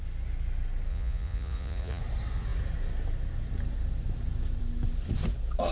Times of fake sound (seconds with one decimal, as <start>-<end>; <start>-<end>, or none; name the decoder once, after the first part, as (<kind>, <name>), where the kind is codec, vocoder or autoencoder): 0.9-2.0 (vocoder, Vocos)